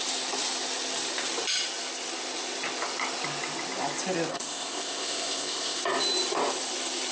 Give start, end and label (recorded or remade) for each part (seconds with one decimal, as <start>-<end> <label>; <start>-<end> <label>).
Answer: 0.0-4.3 recorded; 4.3-5.8 remade; 5.8-7.1 recorded